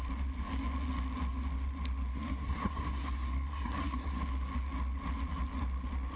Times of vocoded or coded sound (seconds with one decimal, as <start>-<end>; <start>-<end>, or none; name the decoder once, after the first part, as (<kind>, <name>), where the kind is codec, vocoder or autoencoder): 2.1-4.2 (codec, SNAC)